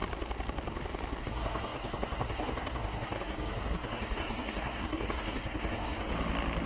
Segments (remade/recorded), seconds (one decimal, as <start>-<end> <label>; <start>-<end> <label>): 0.0-1.2 recorded; 1.2-6.1 remade; 6.1-6.7 recorded